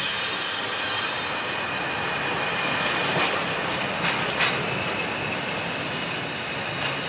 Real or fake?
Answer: real